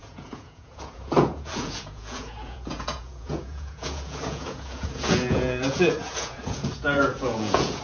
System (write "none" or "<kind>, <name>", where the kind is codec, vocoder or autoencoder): vocoder, Vocos